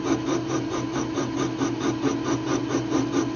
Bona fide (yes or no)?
yes